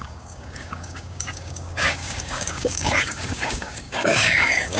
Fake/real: fake